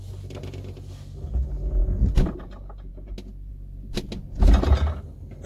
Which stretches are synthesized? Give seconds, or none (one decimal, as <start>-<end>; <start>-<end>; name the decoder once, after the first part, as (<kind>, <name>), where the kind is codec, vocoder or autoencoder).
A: 1.8-2.4 (vocoder, BigVGAN v2)